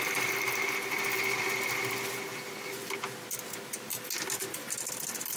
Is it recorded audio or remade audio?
recorded